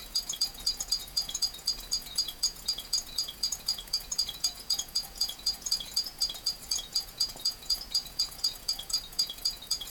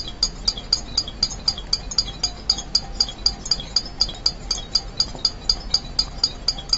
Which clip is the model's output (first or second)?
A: first